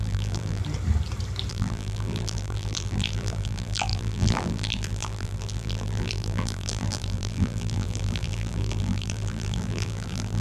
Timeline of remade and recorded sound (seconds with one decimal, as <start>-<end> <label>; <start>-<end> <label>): 0.0-0.6 remade; 0.6-1.5 recorded; 1.5-10.4 remade